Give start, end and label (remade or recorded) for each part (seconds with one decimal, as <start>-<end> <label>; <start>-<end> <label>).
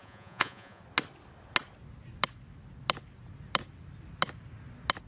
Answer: 0.0-0.8 remade; 0.8-5.1 recorded